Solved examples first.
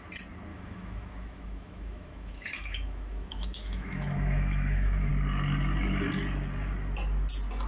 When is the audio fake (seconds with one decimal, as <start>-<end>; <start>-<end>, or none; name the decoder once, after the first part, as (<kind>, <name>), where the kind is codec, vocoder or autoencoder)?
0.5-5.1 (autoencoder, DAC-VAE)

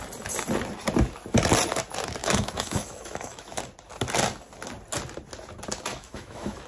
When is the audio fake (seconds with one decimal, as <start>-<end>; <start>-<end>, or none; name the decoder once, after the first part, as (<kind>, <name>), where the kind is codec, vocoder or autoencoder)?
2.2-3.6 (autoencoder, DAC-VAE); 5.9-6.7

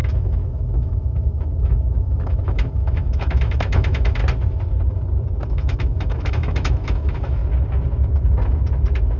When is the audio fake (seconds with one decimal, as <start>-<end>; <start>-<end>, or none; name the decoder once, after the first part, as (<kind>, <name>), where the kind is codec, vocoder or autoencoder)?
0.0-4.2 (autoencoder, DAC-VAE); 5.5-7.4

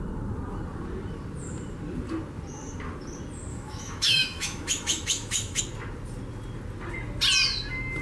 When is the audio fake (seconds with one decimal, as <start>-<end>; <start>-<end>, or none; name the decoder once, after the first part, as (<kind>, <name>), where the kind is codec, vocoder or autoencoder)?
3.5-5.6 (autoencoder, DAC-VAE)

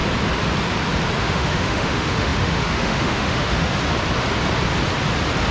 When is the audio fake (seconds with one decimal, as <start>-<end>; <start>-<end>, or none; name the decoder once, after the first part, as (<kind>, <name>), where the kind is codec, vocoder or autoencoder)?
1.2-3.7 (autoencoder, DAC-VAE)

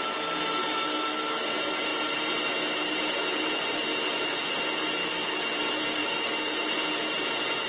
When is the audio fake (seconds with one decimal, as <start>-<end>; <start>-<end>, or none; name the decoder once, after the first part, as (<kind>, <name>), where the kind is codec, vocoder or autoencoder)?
0.6-1.4 (autoencoder, DAC-VAE); 5.0-5.5; 6.0-6.6